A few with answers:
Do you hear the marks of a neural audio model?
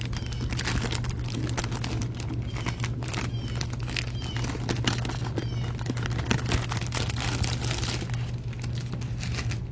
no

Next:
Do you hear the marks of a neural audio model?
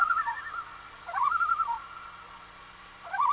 yes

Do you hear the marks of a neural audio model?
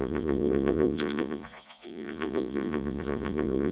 yes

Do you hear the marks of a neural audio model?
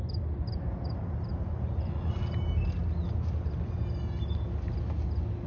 no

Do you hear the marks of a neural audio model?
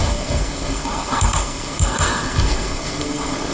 yes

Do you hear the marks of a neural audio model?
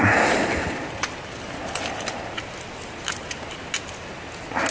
no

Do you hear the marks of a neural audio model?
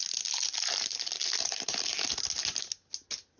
no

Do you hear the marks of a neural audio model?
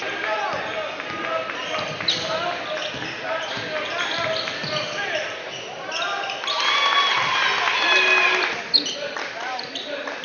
no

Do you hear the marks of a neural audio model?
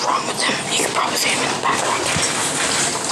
no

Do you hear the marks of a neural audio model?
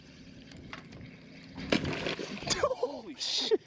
no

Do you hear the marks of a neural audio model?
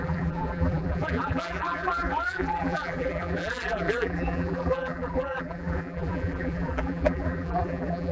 yes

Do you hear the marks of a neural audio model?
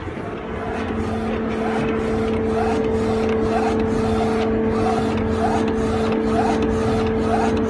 no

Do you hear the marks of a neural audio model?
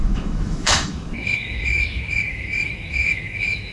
yes